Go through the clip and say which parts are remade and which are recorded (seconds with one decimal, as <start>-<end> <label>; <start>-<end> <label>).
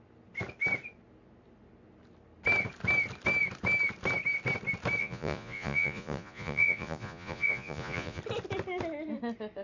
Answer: 0.0-5.0 recorded; 5.0-8.2 remade; 8.2-9.6 recorded